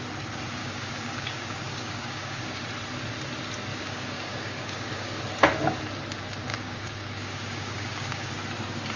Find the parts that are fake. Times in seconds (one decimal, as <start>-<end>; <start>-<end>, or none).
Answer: 0.6-2.6; 3.7-5.2; 6.5-8.3

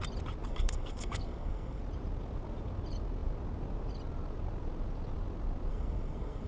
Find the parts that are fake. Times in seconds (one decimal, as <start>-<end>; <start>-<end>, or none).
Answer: 0.5-1.8; 5.7-6.5

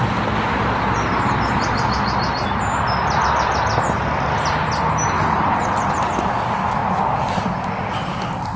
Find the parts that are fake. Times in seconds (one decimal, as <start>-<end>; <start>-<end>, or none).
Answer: 6.8-7.4

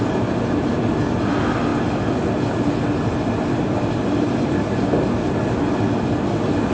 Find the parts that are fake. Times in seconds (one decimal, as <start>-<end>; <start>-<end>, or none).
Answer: none

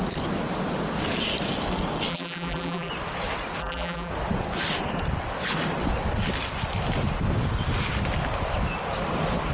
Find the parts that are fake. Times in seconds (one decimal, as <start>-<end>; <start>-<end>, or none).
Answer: 2.1-2.9; 3.6-4.1

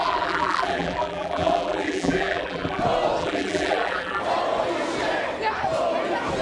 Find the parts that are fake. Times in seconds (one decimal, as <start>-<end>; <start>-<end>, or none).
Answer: 0.0-2.8; 3.2-4.2

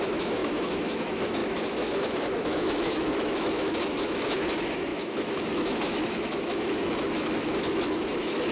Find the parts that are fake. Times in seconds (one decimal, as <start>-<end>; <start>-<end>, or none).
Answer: 0.0-8.5

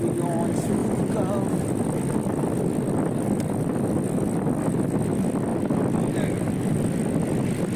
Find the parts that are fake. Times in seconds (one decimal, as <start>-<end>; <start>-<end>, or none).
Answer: none